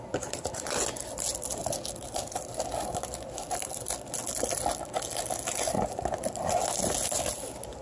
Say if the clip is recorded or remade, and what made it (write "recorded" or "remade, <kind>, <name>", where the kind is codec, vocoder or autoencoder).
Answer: recorded